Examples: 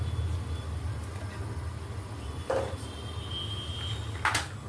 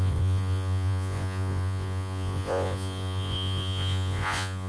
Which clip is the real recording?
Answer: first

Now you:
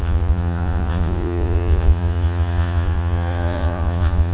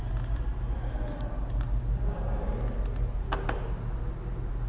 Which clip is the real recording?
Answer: second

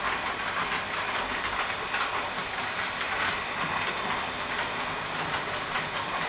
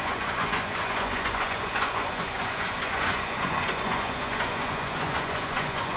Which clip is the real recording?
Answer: first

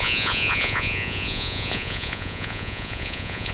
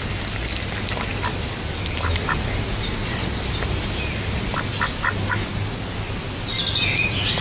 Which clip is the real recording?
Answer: second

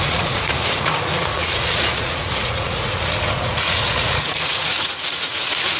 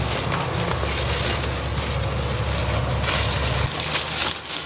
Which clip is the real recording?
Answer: second